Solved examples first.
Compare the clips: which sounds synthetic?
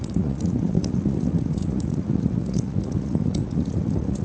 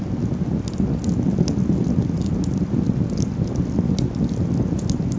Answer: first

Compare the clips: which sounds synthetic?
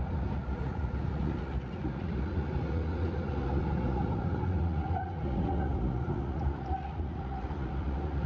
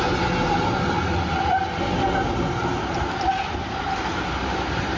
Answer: first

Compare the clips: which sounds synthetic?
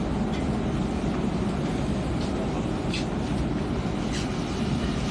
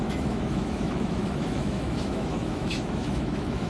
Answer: second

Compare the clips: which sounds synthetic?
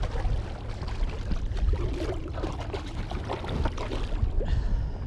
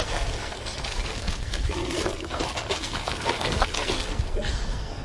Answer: second